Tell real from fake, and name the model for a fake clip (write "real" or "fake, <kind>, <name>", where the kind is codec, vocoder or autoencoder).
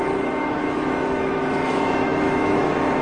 fake, autoencoder, DAC-VAE